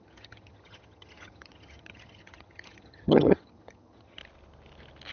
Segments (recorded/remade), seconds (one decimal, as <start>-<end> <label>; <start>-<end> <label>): 0.0-4.2 remade; 4.2-5.1 recorded